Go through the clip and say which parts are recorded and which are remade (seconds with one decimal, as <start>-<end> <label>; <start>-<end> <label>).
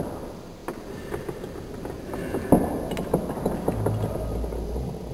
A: 0.0-5.1 recorded